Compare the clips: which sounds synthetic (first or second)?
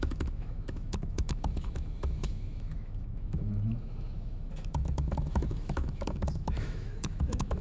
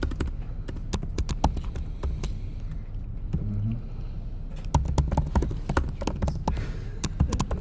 first